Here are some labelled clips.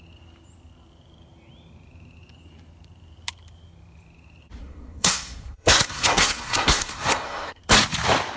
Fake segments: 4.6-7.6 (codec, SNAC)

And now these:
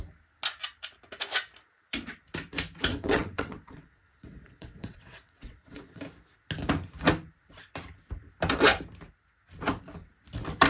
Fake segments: 2.9-6.0 (vocoder, WaveNeXt)

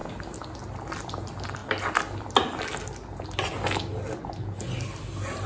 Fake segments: none

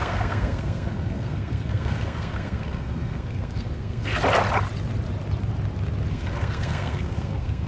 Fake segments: 0.0-4.1 (codec, SNAC); 6.1-7.7

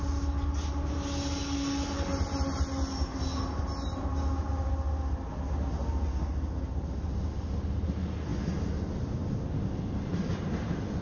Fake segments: none

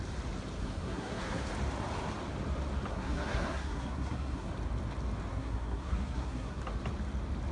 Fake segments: 0.6-1.5 (codec, SNAC); 2.9-4.5; 5.3-6.6

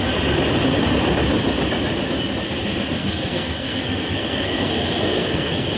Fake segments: 3.0-5.8 (codec, SNAC)